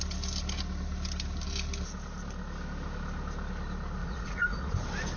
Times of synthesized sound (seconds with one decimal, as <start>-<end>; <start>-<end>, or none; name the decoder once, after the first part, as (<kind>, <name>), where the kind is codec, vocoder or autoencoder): 4.0-4.7 (vocoder, Vocos)